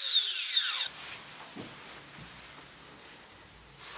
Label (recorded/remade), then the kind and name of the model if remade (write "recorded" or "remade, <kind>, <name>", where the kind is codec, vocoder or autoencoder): recorded